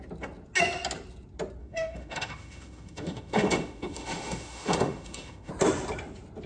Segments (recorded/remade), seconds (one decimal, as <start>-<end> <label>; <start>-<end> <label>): 0.0-1.6 recorded; 1.6-5.5 remade; 5.5-6.5 recorded